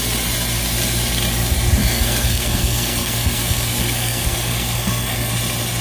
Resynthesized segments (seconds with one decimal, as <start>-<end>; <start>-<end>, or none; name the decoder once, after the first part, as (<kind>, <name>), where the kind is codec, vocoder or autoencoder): 1.8-5.3 (codec, SNAC)